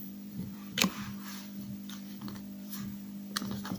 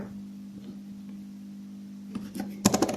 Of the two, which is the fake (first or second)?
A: first